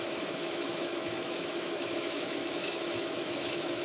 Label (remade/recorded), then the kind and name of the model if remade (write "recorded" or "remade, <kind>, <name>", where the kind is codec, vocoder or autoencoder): remade, autoencoder, DAC-VAE